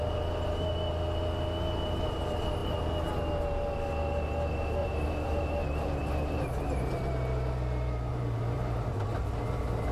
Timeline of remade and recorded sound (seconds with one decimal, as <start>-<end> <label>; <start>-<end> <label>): 0.0-4.8 recorded; 4.8-6.9 remade; 6.9-8.1 recorded; 8.1-8.9 remade; 8.9-9.9 recorded